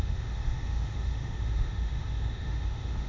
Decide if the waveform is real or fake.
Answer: fake